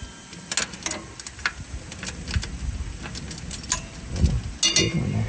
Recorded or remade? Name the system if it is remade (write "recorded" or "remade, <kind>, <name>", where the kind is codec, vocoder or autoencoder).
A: recorded